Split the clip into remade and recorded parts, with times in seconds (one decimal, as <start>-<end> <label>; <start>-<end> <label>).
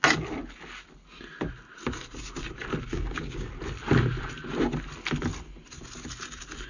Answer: 0.0-2.9 recorded; 2.9-3.5 remade; 3.5-6.7 recorded